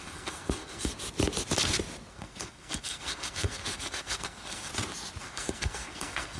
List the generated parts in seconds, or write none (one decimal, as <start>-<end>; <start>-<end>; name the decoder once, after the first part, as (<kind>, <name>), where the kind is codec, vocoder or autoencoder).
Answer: 0.0-0.9 (codec, SNAC); 2.1-4.7; 5.2-6.4